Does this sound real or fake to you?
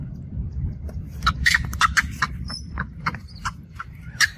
fake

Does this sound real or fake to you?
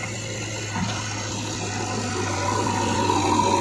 real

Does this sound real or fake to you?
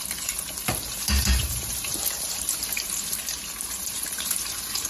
fake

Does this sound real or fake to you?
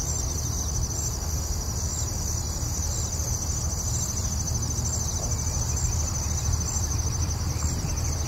real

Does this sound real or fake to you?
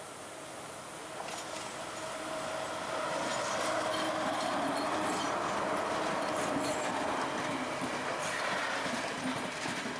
real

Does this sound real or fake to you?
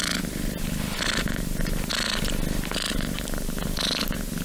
real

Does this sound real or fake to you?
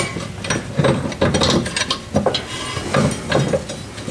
real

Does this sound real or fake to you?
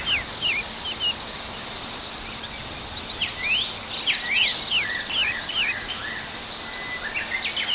real